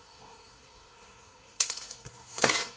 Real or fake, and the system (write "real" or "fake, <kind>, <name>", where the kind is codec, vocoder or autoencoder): fake, codec, SNAC